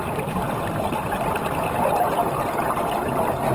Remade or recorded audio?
recorded